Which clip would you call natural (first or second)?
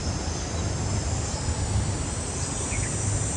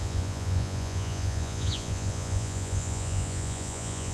first